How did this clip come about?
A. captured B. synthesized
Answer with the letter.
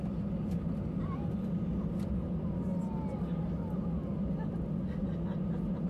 A